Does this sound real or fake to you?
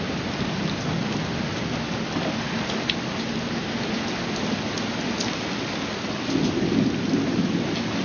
real